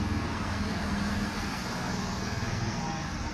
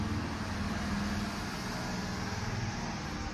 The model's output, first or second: first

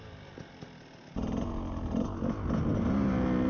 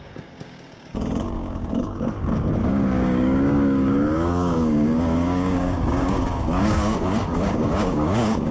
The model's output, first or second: second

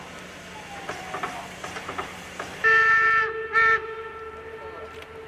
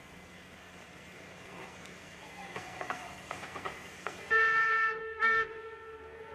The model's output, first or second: second